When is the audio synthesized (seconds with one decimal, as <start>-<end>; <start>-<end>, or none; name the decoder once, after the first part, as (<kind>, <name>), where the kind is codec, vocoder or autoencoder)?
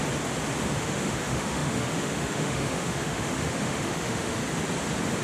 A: 0.8-4.4 (autoencoder, DAC-VAE)